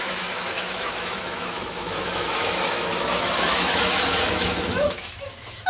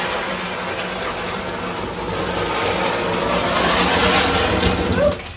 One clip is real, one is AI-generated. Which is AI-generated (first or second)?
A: first